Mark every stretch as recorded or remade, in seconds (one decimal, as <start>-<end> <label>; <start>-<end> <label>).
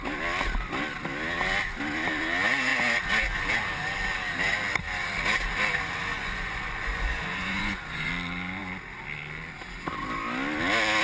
0.0-6.1 recorded; 6.1-8.1 remade; 8.1-11.0 recorded